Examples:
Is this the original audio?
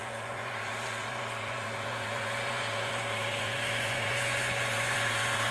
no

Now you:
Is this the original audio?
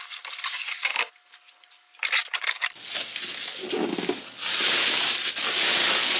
yes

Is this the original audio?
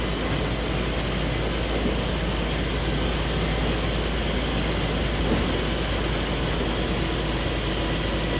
yes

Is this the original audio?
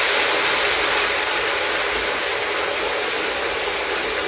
yes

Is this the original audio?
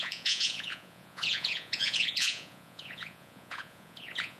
no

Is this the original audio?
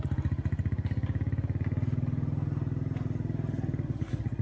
yes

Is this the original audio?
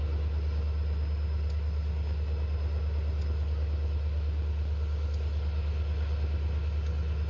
yes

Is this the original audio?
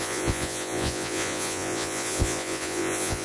no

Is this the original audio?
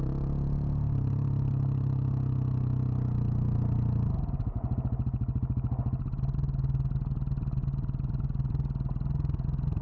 yes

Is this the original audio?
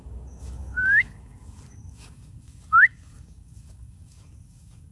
no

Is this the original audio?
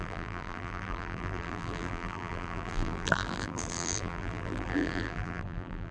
no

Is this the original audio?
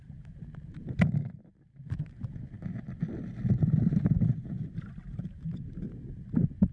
yes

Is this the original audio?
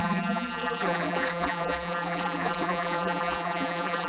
no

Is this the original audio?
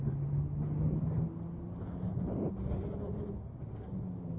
yes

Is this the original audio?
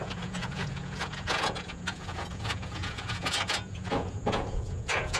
no